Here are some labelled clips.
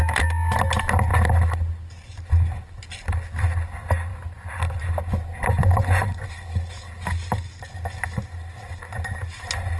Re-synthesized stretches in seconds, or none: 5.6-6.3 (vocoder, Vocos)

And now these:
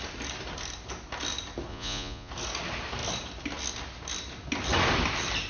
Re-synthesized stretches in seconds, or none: 1.7-2.3 (vocoder, Vocos)

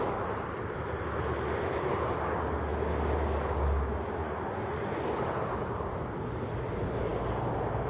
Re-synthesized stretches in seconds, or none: 4.2-4.8 (vocoder, Vocos)

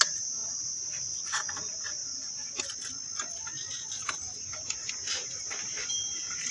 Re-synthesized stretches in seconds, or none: none

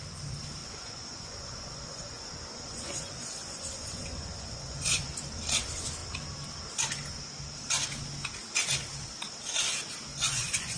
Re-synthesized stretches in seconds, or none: 0.6-5.1 (vocoder, Vocos); 10.1-10.8

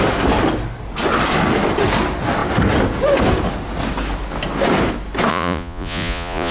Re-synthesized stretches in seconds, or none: 5.3-6.5 (vocoder, Vocos)

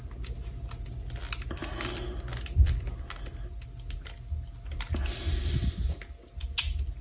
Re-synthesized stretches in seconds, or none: none